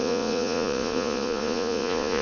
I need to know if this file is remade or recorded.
remade